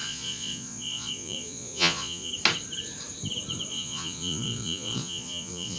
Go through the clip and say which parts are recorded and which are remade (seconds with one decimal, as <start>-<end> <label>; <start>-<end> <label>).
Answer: 0.0-2.3 remade; 2.3-3.7 recorded; 3.7-5.8 remade

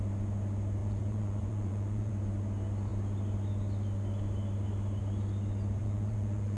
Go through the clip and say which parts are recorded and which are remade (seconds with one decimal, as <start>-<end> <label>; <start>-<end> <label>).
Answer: 0.0-0.8 recorded; 0.8-2.1 remade; 2.1-5.8 recorded; 5.8-6.6 remade

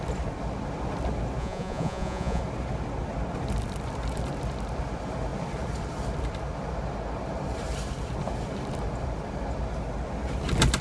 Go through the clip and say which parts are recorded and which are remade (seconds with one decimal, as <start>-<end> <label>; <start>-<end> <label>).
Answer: 0.0-1.4 recorded; 1.4-2.4 remade; 2.4-10.8 recorded

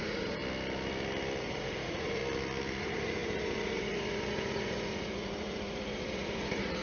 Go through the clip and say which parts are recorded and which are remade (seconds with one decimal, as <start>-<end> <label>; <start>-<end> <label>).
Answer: 0.0-0.4 remade; 0.4-1.4 recorded; 1.4-2.2 remade; 2.2-2.8 recorded; 2.8-6.8 remade

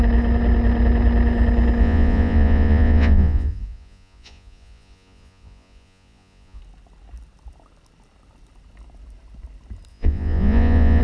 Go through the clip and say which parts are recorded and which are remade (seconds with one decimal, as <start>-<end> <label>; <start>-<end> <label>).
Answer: 0.0-1.8 recorded; 1.8-6.6 remade; 6.6-9.9 recorded; 9.9-11.0 remade

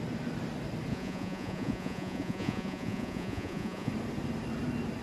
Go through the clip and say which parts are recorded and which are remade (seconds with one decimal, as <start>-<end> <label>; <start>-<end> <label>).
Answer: 0.0-0.9 recorded; 0.9-3.9 remade; 3.9-5.0 recorded